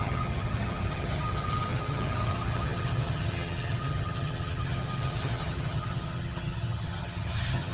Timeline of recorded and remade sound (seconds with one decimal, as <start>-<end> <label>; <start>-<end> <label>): 0.0-7.7 remade